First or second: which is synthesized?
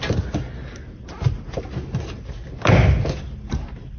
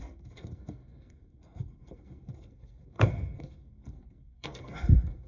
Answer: second